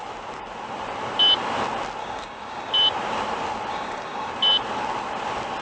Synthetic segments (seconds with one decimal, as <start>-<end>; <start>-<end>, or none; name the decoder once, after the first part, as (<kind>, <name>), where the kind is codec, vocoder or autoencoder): 2.0-2.7 (codec, DAC); 3.7-4.3